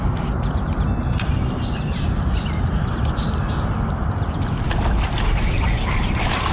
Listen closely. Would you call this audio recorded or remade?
recorded